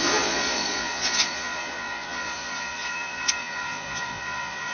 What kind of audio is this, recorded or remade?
remade